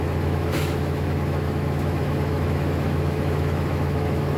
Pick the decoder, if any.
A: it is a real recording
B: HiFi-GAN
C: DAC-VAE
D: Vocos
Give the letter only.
C